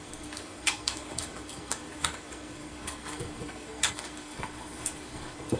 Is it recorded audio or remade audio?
remade